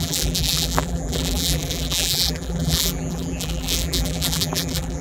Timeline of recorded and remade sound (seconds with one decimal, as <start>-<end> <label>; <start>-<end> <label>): 0.0-5.0 remade